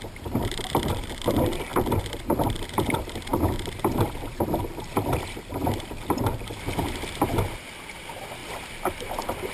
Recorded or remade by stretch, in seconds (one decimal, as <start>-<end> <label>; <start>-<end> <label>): 0.0-9.5 remade